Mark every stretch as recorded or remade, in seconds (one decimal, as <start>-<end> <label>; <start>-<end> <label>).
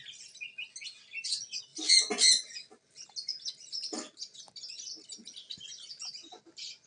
0.0-6.9 recorded